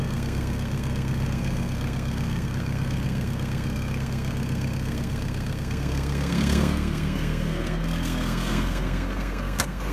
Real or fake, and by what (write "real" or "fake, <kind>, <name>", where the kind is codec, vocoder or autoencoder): fake, codec, SNAC